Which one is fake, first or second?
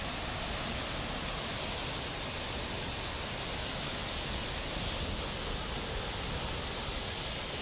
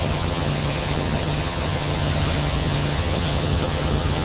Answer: second